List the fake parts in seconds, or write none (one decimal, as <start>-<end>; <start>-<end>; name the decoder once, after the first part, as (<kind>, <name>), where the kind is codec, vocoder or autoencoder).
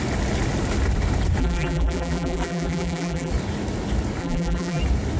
1.4-3.3 (vocoder, BigVGAN v2); 4.2-4.8